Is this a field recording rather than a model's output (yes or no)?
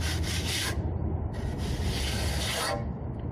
yes